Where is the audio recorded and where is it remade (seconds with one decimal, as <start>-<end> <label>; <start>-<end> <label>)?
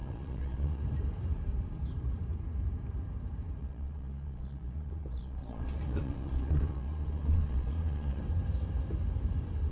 0.0-0.8 remade; 0.8-3.6 recorded; 3.6-8.2 remade; 8.2-9.7 recorded